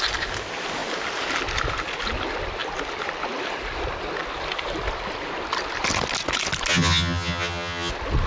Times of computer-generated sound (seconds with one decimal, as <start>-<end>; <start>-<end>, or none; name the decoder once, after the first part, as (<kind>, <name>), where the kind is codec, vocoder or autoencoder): 6.7-7.9 (vocoder, HiFi-GAN)